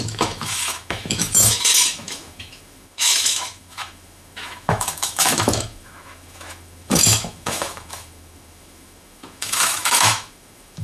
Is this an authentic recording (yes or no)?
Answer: no